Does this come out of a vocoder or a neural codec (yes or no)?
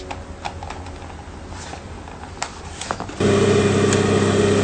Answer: no